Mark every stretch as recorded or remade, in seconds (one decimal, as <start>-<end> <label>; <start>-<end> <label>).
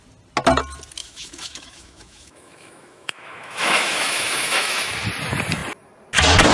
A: 0.0-1.0 recorded; 1.0-4.9 remade; 4.9-6.5 recorded